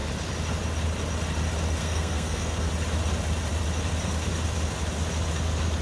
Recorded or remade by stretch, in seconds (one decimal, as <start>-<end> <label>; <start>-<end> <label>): 0.0-1.8 recorded; 1.8-2.7 remade; 2.7-5.8 recorded